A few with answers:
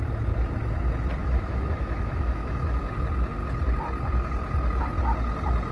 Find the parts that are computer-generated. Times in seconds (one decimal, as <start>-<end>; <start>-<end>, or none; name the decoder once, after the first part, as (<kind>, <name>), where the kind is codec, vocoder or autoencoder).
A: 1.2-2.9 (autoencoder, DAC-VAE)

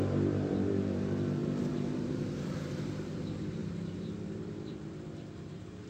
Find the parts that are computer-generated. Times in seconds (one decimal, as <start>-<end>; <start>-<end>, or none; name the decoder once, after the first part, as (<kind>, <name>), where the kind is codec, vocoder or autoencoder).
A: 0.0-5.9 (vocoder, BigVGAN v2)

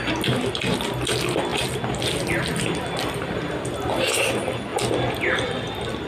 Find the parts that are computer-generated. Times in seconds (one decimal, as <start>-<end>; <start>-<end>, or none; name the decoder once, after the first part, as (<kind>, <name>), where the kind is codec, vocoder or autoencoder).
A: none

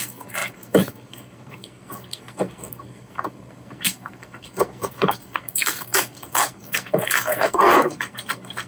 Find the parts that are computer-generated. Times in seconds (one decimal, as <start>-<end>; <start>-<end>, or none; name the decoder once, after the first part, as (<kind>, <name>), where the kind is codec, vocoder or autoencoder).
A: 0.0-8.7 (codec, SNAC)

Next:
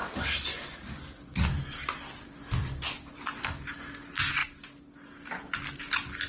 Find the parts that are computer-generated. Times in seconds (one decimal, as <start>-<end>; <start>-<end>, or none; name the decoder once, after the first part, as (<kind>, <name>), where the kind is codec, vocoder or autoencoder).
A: none

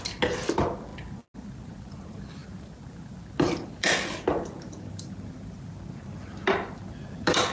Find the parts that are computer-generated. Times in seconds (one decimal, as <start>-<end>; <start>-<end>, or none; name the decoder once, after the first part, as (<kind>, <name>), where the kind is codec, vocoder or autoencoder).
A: none

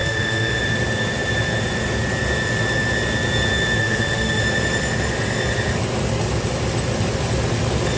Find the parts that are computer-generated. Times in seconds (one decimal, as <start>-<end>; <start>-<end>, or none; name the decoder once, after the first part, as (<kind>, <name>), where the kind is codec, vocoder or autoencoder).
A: 0.0-0.6 (autoencoder, DAC-VAE); 3.8-4.4

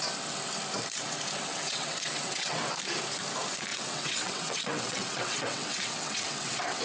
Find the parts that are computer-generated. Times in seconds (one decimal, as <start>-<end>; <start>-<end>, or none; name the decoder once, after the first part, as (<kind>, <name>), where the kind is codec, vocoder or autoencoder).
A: 1.5-2.7 (vocoder, WaveNeXt); 3.7-6.8